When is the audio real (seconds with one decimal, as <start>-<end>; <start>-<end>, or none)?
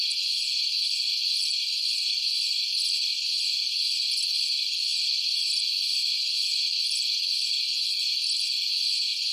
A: 0.0-4.9; 5.5-5.9; 6.8-7.4; 7.9-9.3